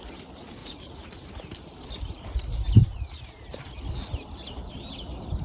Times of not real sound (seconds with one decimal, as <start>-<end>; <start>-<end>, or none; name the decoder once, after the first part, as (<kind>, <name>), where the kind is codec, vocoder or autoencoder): 0.6-1.3 (vocoder, Vocos); 2.8-3.5